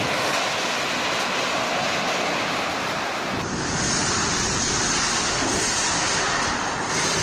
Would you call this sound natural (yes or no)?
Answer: no